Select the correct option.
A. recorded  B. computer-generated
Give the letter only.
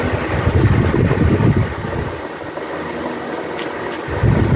A